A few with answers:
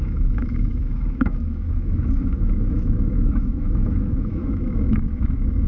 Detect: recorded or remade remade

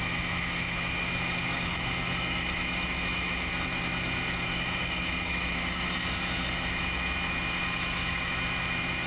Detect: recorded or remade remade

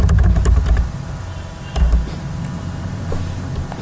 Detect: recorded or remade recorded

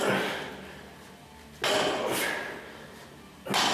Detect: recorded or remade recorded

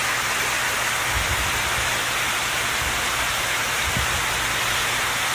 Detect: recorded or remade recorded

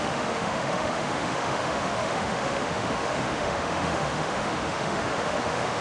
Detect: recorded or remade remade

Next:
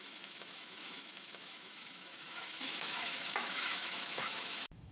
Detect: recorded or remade remade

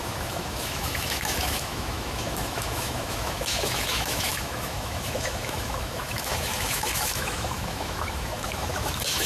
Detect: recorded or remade remade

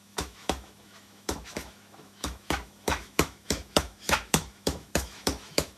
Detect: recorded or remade remade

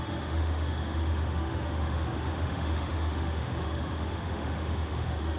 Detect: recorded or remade remade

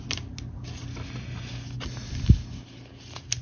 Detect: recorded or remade recorded